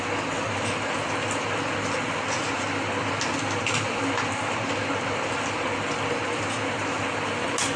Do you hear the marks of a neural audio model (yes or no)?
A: no